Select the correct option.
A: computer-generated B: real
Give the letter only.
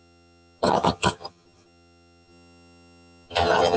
A